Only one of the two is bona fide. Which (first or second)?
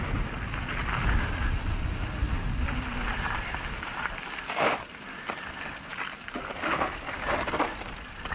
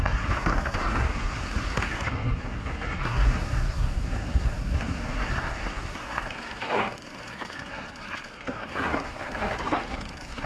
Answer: first